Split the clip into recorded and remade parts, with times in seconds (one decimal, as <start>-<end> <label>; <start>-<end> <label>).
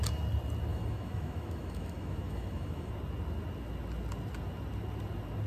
0.0-0.7 recorded; 0.7-2.9 remade; 2.9-5.5 recorded